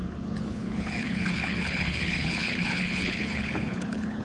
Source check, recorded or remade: remade